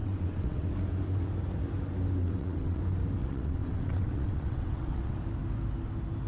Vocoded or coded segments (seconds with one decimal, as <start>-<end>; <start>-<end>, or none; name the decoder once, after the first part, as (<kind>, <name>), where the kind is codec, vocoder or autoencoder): 0.0-0.7 (vocoder, WaveNeXt); 2.2-2.8; 3.2-5.2